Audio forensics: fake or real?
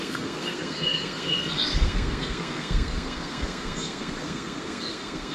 fake